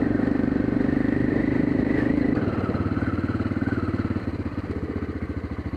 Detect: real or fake fake